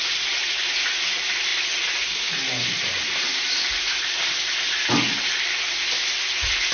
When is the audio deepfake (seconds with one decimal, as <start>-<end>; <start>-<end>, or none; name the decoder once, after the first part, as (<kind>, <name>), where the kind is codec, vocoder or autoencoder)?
none